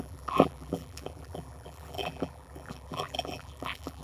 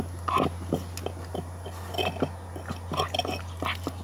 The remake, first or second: first